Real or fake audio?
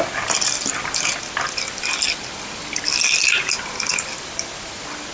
real